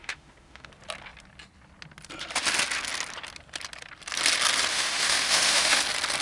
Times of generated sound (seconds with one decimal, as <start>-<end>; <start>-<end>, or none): 0.0-0.7; 4.7-5.8